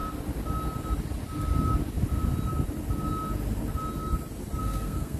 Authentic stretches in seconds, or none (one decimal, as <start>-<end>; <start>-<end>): 0.0-4.6